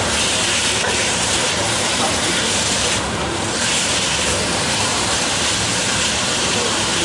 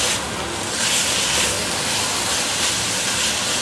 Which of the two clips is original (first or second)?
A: second